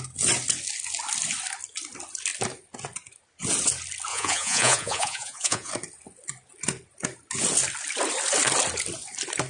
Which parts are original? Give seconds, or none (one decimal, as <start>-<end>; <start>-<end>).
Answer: 0.0-4.1; 5.7-9.5